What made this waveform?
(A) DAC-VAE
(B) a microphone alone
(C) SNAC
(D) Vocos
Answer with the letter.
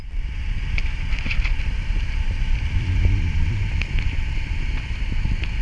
B